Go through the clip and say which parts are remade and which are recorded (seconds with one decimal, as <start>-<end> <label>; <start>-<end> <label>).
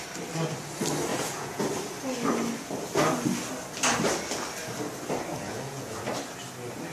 0.0-1.1 recorded; 1.1-1.6 remade; 1.6-5.3 recorded; 5.3-5.9 remade; 5.9-6.9 recorded